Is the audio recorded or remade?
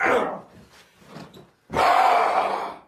recorded